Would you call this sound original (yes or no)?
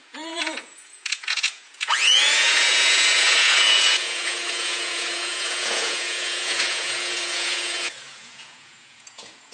no